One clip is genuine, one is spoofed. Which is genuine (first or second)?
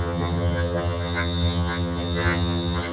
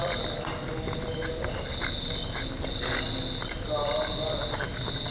second